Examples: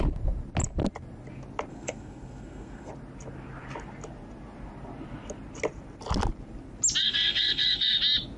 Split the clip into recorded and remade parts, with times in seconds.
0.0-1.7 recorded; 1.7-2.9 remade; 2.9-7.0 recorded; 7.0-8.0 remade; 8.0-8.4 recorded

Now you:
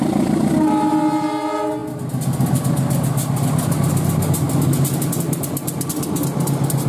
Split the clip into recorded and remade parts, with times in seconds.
0.0-6.9 recorded